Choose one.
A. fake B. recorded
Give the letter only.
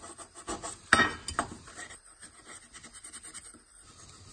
B